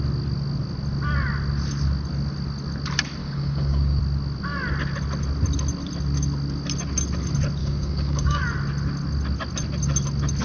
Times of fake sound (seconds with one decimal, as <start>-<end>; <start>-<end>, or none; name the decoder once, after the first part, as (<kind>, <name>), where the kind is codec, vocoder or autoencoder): 3.2-4.0 (codec, DAC); 7.6-8.4